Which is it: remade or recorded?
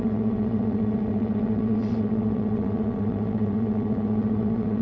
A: remade